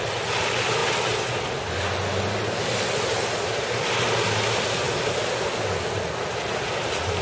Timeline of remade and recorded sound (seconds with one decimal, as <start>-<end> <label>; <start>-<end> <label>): 0.0-7.2 recorded